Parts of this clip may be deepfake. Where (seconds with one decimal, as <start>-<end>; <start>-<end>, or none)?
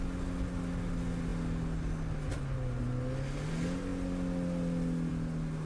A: none